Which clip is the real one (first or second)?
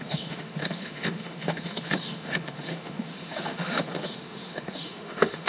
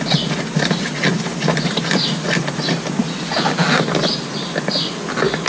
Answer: second